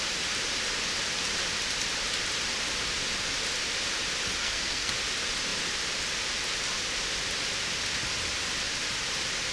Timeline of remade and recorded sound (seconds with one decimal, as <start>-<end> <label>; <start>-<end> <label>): 0.0-4.4 recorded; 4.4-4.9 remade; 4.9-9.5 recorded